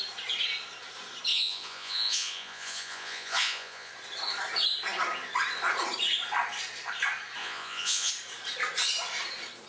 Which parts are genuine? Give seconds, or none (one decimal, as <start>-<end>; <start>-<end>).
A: 0.0-1.3; 3.9-7.4; 8.1-9.7